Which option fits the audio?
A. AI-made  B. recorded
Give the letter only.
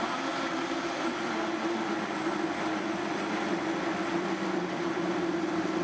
B